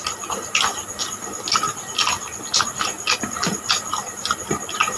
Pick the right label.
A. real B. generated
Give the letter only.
A